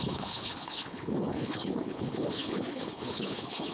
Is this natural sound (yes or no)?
no